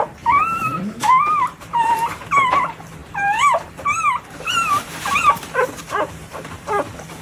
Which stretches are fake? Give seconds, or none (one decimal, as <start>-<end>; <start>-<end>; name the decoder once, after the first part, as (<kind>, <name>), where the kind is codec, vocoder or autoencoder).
0.0-7.2 (vocoder, BigVGAN v2)

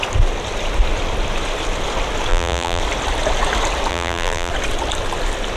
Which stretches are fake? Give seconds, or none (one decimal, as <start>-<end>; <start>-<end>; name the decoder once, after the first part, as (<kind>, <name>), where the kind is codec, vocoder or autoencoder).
2.3-2.8 (vocoder, BigVGAN v2); 3.9-4.5

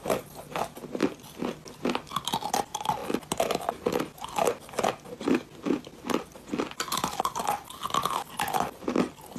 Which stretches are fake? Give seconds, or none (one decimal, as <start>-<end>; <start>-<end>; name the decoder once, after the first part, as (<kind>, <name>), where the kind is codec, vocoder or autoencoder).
none

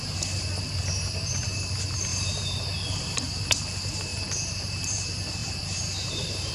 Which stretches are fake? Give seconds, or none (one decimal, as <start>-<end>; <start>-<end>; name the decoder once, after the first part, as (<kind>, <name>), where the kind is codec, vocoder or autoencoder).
2.1-3.5 (vocoder, BigVGAN v2); 4.1-5.0; 5.4-6.5

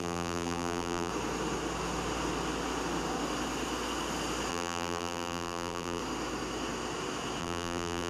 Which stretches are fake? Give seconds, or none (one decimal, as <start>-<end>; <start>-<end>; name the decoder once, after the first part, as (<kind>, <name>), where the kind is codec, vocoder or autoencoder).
0.0-1.1 (vocoder, BigVGAN v2); 4.5-6.0; 7.4-8.1

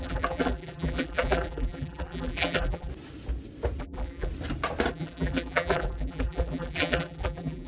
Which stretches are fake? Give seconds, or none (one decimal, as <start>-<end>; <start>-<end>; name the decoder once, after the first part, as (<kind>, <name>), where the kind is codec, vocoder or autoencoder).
0.0-2.9 (vocoder, BigVGAN v2); 3.8-4.3; 4.9-7.7

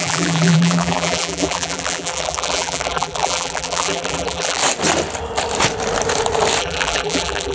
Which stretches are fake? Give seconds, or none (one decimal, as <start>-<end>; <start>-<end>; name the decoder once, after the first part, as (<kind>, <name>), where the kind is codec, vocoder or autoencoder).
0.0-4.6 (vocoder, BigVGAN v2); 6.6-7.5

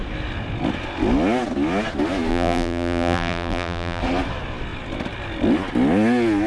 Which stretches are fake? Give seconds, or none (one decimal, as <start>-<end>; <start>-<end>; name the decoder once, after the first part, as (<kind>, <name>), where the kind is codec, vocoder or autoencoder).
2.3-4.0 (vocoder, BigVGAN v2)